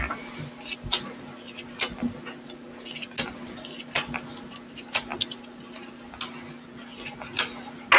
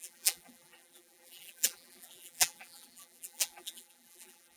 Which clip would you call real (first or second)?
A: first